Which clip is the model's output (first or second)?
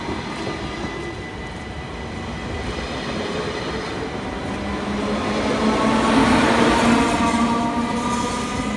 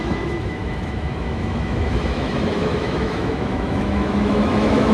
second